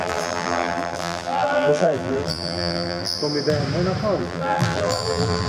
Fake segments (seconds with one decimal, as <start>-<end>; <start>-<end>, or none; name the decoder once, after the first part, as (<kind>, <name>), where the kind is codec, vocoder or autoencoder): 0.0-3.2 (vocoder, BigVGAN v2); 4.2-5.5